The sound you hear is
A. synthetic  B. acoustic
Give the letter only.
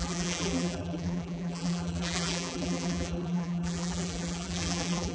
A